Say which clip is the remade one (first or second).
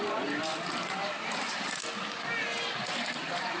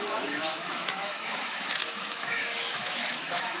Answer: second